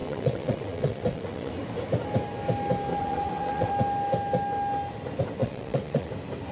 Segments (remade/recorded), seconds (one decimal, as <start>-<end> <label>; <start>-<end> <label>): 0.0-1.5 remade; 1.5-2.9 recorded; 2.9-3.7 remade; 3.7-5.4 recorded; 5.4-6.1 remade; 6.1-6.5 recorded